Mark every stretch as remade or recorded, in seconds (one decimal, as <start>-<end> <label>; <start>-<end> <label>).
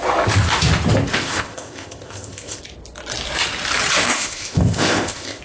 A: 0.0-1.1 recorded; 1.1-2.6 remade; 2.6-4.1 recorded; 4.1-5.4 remade